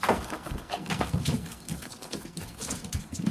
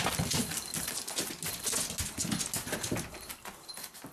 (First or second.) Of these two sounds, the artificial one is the first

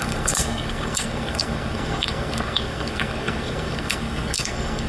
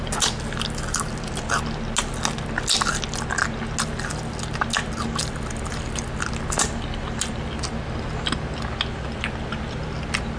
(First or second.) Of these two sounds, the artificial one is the first